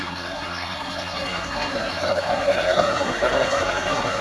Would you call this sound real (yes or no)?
no